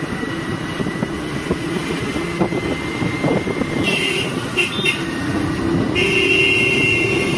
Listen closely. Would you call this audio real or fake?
real